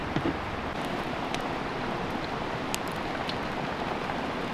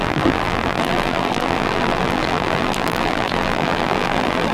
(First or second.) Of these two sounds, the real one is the first